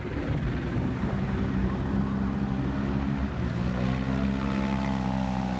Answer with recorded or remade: recorded